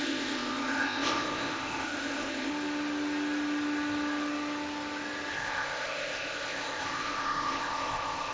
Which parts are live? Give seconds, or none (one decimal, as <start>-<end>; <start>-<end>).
2.5-5.3